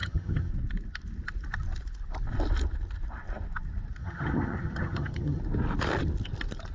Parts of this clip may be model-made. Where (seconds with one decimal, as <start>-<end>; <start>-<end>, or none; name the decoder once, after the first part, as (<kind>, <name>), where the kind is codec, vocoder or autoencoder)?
0.0-0.5 (vocoder, HiFi-GAN); 4.0-5.4

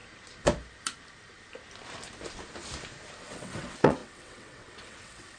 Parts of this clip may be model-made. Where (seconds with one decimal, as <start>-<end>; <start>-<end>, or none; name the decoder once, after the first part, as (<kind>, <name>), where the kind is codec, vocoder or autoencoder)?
3.2-5.4 (vocoder, WaveNeXt)

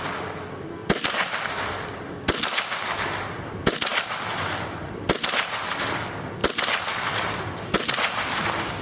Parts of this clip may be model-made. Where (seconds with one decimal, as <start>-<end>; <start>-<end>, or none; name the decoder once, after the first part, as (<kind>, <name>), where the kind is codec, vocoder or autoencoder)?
none

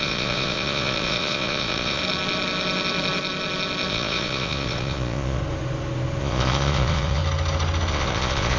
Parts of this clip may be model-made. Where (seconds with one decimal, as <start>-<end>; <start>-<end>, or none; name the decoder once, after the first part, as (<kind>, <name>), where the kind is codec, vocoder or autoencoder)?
0.0-2.0 (vocoder, Vocos); 3.9-5.4; 6.2-7.2; 7.9-8.6

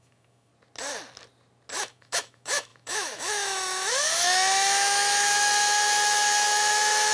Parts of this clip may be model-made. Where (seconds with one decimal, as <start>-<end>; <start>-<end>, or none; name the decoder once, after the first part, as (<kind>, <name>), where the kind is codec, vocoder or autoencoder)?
0.0-0.5 (autoencoder, DAC-VAE); 1.8-7.1

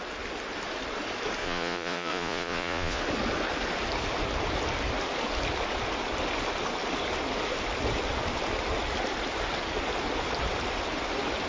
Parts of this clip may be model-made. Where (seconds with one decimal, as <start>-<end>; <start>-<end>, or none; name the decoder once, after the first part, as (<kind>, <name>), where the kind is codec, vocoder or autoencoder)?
1.4-3.0 (vocoder, Vocos)